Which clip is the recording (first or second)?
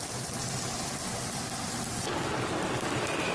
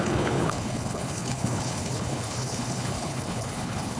first